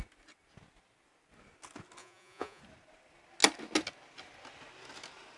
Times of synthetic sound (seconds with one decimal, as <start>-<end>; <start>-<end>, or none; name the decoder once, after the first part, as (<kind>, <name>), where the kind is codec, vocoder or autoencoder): 2.0-2.6 (vocoder, Vocos)